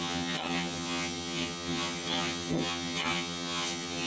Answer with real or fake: fake